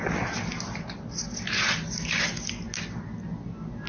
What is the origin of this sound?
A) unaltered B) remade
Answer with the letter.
A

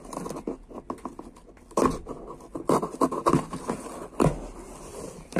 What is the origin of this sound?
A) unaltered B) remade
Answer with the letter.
A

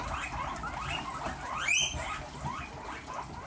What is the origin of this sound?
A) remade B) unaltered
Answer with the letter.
B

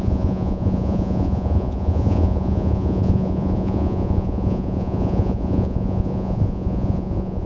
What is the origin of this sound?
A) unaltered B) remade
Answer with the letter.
B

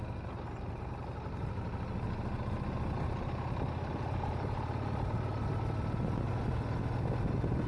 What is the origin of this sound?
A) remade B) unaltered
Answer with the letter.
B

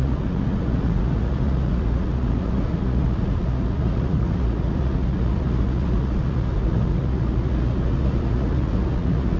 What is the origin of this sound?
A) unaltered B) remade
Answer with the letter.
B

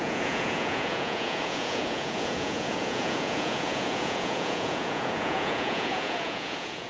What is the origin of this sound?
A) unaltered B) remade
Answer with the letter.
B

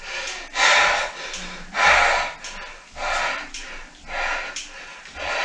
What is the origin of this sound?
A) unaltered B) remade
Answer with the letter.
A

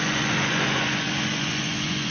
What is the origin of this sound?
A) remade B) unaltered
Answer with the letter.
A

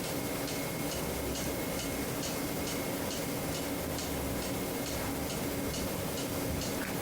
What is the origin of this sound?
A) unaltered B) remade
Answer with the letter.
A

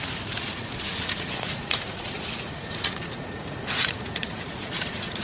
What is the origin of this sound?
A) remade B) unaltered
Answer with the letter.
A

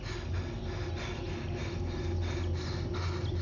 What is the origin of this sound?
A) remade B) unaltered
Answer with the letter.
B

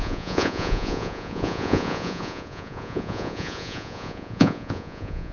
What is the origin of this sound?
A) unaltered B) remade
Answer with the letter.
B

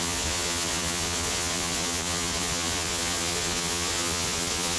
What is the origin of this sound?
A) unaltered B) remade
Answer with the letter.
B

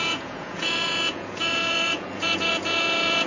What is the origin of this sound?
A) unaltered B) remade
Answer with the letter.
B